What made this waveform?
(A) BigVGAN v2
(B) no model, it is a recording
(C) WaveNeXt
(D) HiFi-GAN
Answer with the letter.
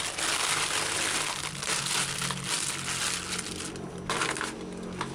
B